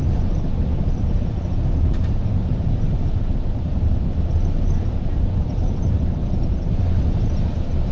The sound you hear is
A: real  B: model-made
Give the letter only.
B